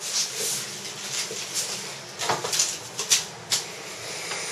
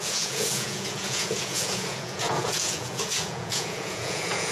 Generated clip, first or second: second